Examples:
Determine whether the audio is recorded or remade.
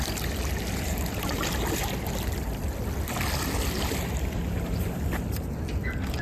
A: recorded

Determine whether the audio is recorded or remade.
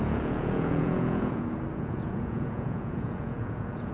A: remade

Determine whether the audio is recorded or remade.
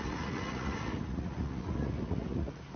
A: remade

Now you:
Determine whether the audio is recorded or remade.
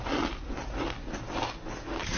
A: recorded